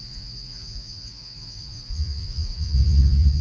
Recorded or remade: remade